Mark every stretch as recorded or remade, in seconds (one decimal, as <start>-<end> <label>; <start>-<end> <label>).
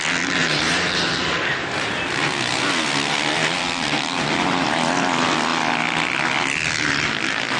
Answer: 0.0-0.4 recorded; 0.4-2.0 remade; 2.0-7.6 recorded